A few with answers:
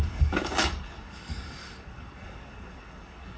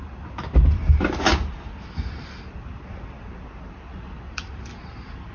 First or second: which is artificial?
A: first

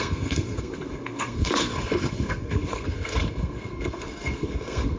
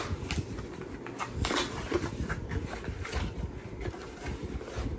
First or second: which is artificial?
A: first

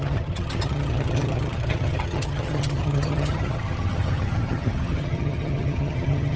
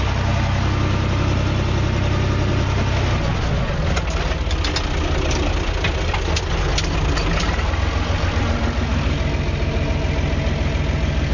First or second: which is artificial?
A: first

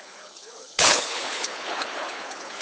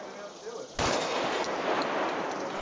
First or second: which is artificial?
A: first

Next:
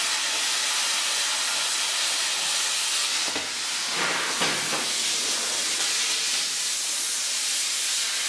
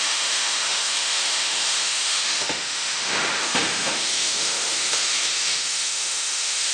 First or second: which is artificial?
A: second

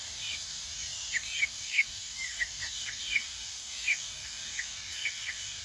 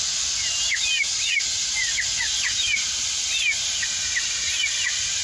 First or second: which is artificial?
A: first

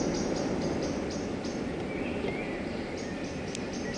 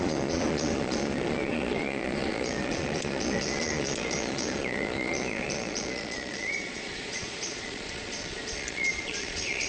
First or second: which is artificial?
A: second